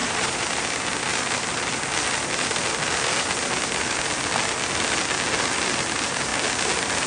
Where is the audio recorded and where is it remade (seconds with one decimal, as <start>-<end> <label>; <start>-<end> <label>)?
0.0-0.6 remade; 0.6-7.1 recorded